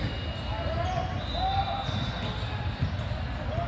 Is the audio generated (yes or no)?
no